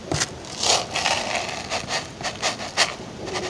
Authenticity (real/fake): fake